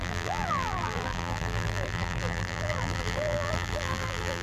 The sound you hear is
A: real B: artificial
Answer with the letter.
B